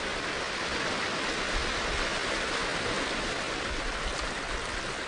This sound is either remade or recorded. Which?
recorded